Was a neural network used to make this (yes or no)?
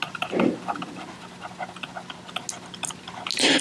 no